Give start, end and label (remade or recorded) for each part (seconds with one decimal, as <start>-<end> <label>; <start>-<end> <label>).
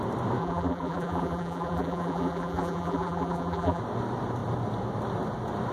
0.0-0.4 recorded; 0.4-3.8 remade; 3.8-5.7 recorded